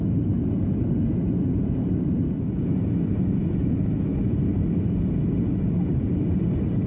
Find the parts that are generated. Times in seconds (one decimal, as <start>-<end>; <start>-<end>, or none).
0.0-4.1; 6.0-6.9